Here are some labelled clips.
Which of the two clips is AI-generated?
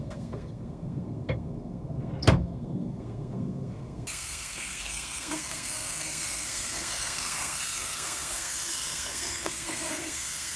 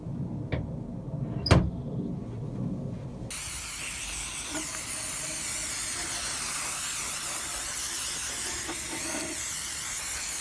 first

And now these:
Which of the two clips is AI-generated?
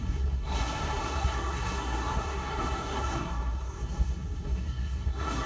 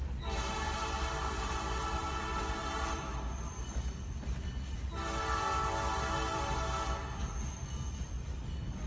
first